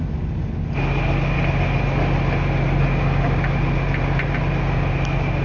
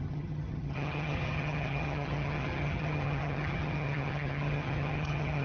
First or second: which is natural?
first